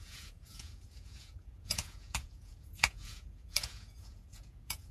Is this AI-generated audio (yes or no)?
yes